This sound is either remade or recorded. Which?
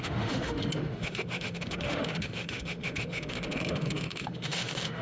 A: remade